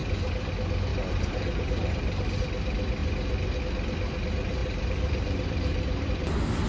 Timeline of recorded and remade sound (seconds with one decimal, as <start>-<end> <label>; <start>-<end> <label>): 0.0-0.5 remade; 0.5-0.9 recorded; 0.9-2.4 remade; 2.4-4.6 recorded; 4.6-6.0 remade; 6.0-6.7 recorded